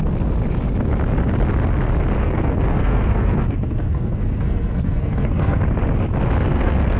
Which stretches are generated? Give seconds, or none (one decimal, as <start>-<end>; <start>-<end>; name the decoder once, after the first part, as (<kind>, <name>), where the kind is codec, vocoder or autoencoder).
2.2-5.6 (codec, SNAC); 6.5-7.0